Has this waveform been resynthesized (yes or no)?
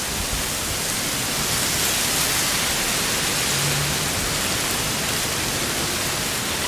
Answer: no